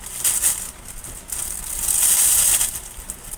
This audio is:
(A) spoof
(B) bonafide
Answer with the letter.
B